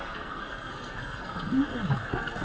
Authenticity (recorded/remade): remade